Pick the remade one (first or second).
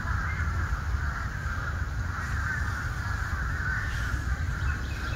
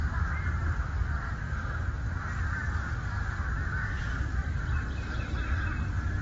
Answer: first